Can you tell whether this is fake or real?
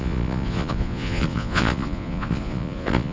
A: fake